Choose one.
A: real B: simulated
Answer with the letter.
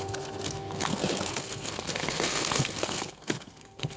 B